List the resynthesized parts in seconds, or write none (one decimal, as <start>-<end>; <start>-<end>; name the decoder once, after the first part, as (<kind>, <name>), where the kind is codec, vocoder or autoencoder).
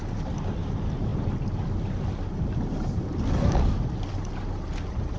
none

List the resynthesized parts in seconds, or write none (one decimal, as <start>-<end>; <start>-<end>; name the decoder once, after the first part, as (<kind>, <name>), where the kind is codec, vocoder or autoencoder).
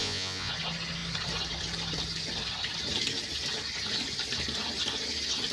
0.0-0.5 (vocoder, Vocos)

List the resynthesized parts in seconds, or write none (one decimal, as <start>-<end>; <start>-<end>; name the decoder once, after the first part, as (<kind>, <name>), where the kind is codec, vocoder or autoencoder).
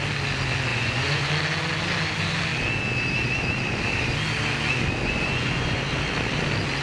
0.7-1.3 (vocoder, Vocos); 5.0-5.8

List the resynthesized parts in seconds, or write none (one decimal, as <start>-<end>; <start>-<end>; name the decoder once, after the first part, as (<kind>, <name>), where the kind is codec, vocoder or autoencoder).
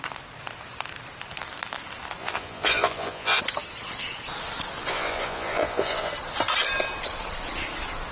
2.2-3.4 (vocoder, Vocos); 4.9-6.1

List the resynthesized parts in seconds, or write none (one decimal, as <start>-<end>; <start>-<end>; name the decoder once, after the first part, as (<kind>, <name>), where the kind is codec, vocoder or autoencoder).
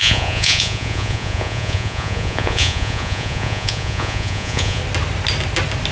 0.0-4.8 (vocoder, Vocos)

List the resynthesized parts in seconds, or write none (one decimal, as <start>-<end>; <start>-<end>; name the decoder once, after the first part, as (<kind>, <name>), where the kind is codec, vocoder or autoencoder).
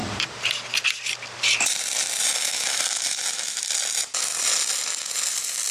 2.4-3.8 (autoencoder, DAC-VAE)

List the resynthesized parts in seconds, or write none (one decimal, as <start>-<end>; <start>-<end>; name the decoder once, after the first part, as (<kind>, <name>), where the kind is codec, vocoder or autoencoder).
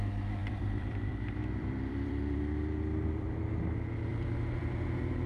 0.4-3.1 (vocoder, BigVGAN v2); 4.1-5.3